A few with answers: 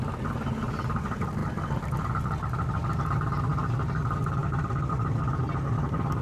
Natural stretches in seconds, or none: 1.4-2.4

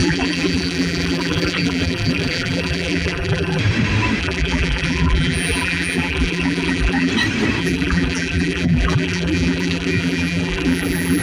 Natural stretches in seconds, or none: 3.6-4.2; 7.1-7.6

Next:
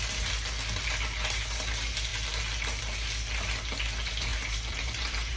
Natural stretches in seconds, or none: 0.0-4.3

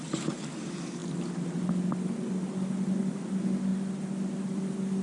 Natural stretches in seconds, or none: 0.0-5.0

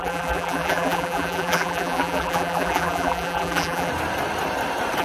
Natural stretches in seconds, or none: 3.9-5.0